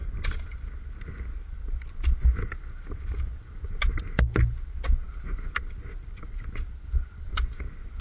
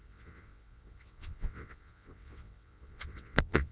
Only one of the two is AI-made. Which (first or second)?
second